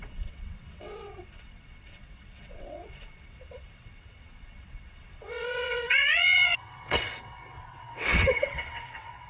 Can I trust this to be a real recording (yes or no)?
no